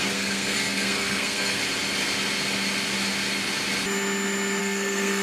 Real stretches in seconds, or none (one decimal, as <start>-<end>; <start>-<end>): 1.6-4.6